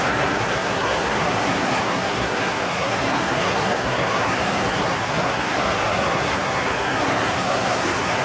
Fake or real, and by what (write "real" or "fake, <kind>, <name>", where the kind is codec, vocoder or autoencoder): fake, codec, SNAC